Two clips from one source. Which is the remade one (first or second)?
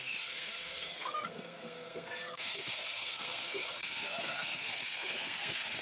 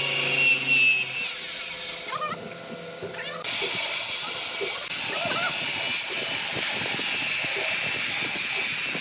first